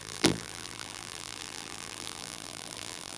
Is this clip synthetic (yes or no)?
yes